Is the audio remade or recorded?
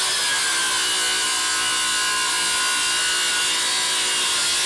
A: recorded